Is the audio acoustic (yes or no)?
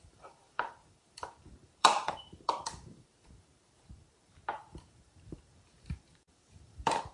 no